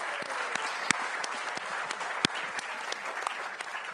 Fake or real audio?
real